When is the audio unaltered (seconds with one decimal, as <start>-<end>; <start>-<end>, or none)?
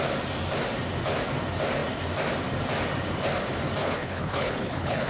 0.0-3.8